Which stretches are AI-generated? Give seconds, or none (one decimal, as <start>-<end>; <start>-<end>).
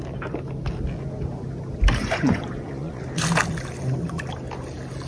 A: 2.0-3.0